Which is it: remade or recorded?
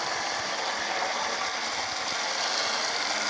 recorded